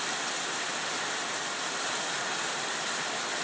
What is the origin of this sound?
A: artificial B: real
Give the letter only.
B